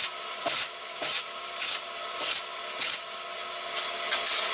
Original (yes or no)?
yes